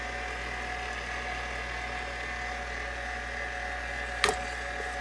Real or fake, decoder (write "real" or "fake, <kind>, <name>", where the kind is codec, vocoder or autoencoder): real